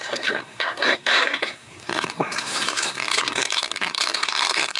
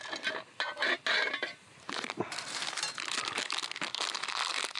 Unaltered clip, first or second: second